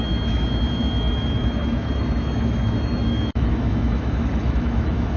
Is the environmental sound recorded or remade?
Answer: remade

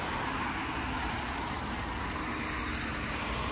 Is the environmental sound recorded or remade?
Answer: recorded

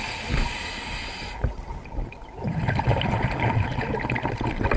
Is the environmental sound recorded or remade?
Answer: recorded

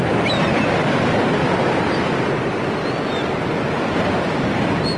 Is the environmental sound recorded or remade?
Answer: recorded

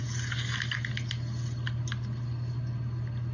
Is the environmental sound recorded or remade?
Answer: recorded